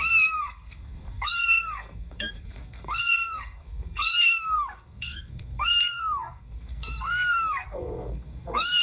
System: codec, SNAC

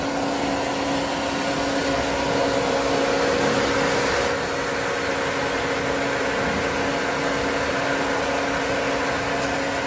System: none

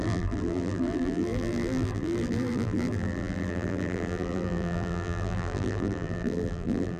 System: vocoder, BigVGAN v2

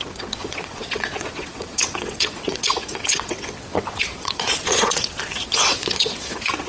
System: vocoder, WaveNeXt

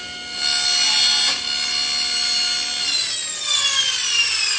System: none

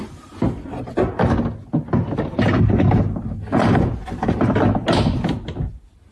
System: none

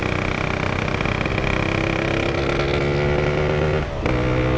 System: none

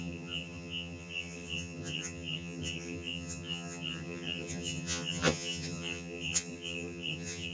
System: vocoder, HiFi-GAN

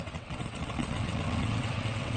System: vocoder, WaveNeXt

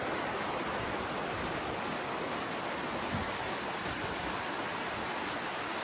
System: none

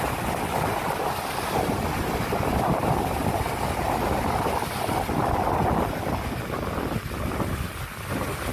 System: none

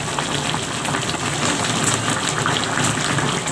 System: none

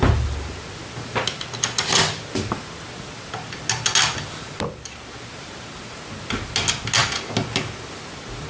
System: none